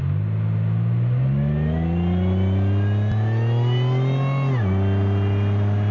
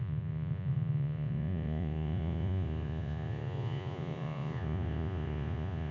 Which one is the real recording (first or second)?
first